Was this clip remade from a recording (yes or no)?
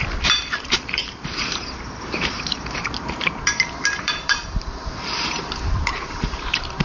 yes